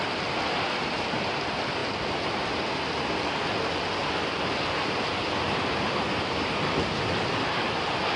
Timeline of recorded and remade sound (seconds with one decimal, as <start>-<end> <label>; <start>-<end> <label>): 0.0-8.2 recorded